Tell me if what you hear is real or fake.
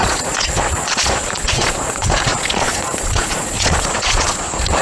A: fake